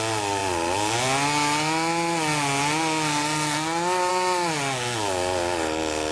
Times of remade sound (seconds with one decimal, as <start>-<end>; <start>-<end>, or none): none

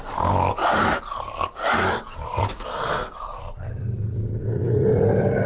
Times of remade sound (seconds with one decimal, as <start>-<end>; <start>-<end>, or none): 3.3-5.5